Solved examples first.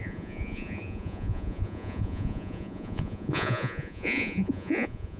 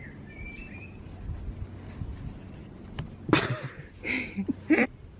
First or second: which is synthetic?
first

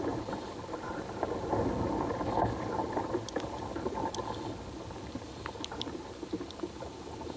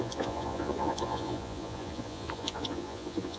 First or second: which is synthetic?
second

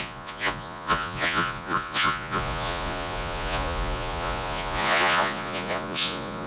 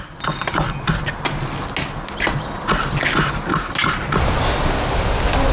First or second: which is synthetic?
first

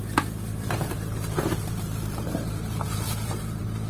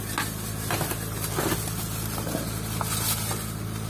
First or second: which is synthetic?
first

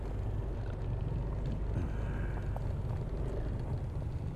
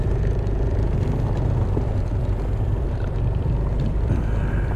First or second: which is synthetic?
second